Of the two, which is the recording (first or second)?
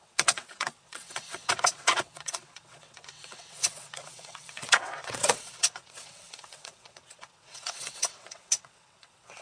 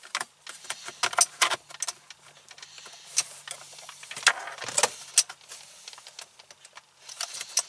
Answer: second